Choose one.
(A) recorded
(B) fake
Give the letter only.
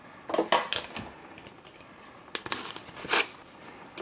A